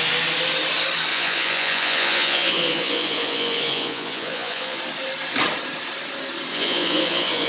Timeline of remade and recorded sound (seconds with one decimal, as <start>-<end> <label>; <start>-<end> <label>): 0.0-1.1 recorded; 1.1-4.8 remade; 4.8-6.5 recorded; 6.5-7.5 remade